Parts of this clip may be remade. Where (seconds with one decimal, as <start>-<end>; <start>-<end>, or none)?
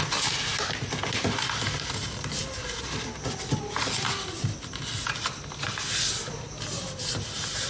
none